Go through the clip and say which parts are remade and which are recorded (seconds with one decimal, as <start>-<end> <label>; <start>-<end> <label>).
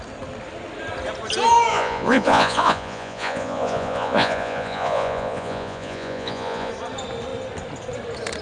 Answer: 0.0-1.7 recorded; 1.7-6.7 remade; 6.7-8.4 recorded